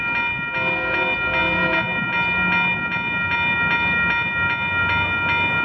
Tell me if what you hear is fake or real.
real